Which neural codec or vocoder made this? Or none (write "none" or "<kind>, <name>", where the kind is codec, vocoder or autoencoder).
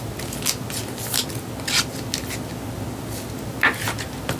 none